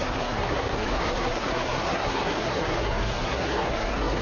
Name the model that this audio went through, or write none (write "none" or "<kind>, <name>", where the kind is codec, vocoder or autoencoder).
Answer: codec, SNAC